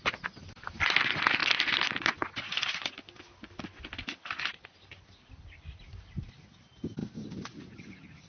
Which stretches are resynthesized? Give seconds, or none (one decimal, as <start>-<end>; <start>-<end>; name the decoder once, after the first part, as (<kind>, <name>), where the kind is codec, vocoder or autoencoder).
none